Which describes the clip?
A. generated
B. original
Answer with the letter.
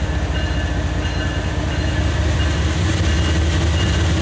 B